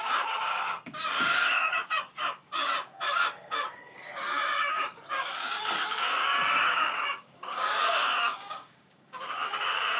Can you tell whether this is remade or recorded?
remade